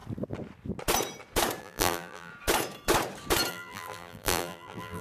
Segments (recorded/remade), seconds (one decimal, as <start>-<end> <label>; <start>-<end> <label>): 0.0-1.6 recorded; 1.6-2.3 remade; 2.3-3.5 recorded; 3.5-5.0 remade